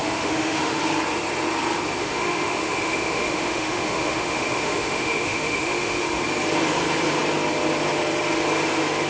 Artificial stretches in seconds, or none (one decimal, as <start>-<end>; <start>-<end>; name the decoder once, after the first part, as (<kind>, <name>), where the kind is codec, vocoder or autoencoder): 0.0-0.8 (autoencoder, DAC-VAE); 2.0-6.2